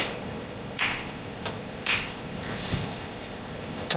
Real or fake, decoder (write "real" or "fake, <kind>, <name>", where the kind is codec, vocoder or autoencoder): fake, codec, ZipCodec